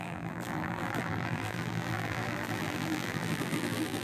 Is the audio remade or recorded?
remade